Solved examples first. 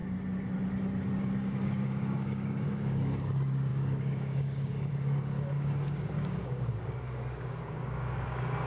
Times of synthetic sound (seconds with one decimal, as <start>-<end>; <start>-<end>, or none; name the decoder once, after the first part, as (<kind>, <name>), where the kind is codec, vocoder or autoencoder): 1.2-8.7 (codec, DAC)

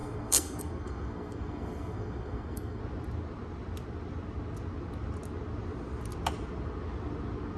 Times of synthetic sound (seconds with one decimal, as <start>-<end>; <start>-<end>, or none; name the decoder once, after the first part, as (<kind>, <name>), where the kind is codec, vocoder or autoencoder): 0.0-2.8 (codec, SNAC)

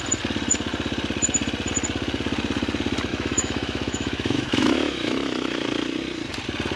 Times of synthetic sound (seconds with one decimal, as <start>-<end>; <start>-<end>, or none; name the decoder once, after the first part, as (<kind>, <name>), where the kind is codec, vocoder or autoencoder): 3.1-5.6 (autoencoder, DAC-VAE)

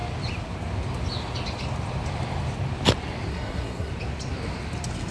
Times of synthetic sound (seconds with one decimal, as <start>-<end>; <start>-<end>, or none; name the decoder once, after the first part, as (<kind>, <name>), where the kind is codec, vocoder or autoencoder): 3.3-3.9 (codec, SNAC)

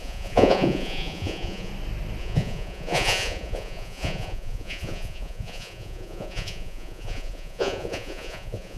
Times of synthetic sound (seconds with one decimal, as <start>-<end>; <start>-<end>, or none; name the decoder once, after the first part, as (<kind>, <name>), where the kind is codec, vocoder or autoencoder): 0.0-1.7 (vocoder, Vocos); 2.2-8.8

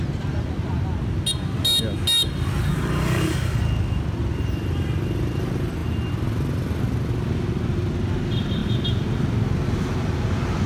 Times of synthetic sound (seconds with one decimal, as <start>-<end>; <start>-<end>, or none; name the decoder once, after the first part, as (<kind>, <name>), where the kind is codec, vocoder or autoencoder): 2.7-3.6 (codec, DAC)

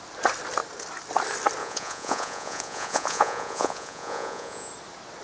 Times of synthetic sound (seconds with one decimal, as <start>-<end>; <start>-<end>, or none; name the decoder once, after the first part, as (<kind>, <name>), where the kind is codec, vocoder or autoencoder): 1.6-4.7 (vocoder, Vocos)

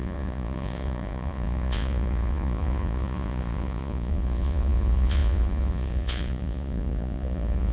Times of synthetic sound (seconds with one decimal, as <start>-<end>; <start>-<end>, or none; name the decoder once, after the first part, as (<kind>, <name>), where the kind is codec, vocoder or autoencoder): 0.0-7.7 (vocoder, Vocos)